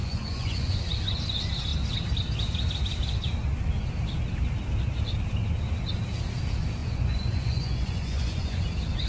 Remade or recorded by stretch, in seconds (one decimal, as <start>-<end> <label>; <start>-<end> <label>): 0.0-0.8 remade; 0.8-6.8 recorded; 6.8-8.6 remade; 8.6-9.1 recorded